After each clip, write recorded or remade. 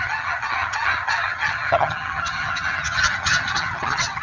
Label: remade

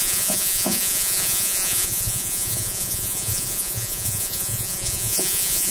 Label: remade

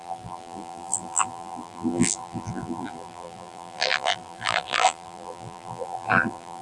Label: remade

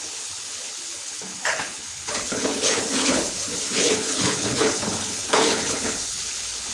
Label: remade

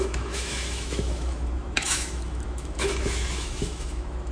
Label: remade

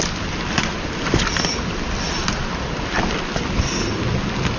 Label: recorded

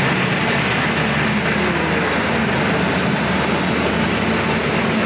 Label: recorded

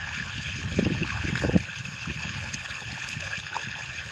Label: remade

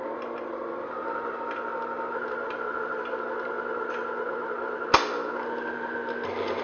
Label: recorded